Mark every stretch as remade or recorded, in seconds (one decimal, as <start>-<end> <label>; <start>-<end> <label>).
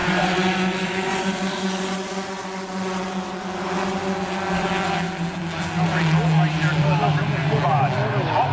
0.0-3.1 remade; 3.1-8.5 recorded